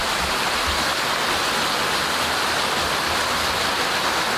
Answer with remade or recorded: recorded